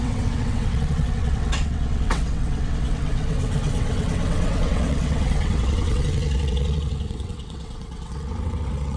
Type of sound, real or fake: fake